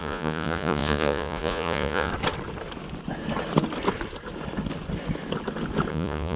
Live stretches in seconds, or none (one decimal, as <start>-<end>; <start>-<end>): 2.1-5.9

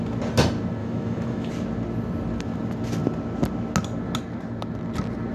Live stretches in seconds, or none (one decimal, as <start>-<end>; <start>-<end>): 0.0-0.8; 1.5-5.3

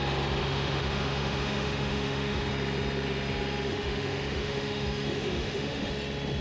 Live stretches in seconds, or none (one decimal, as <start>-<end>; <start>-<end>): 0.0-0.4; 2.5-3.7; 5.9-6.4